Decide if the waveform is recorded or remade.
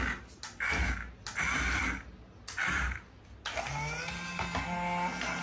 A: recorded